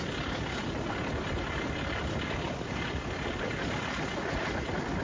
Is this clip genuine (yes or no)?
yes